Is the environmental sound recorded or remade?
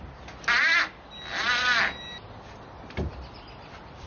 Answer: recorded